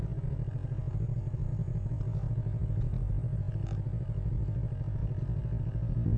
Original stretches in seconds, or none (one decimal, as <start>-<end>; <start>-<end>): 0.0-6.2